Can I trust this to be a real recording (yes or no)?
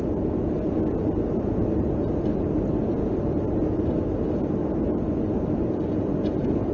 yes